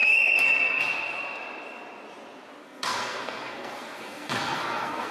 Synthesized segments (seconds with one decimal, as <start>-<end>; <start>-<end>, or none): 0.0-0.8; 2.6-5.1